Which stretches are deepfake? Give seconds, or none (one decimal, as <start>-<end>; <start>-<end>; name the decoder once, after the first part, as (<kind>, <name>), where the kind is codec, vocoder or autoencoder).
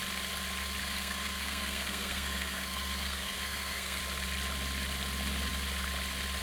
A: 0.8-4.0 (codec, SNAC)